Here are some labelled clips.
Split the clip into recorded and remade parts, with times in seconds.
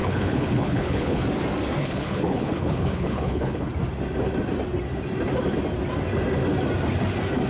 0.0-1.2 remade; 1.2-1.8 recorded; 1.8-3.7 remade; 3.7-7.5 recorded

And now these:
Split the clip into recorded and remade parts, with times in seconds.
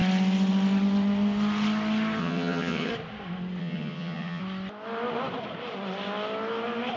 0.0-2.2 recorded; 2.2-2.9 remade; 2.9-3.6 recorded; 3.6-4.4 remade; 4.4-7.0 recorded